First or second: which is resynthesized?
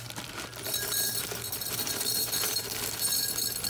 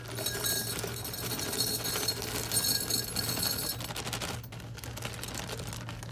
first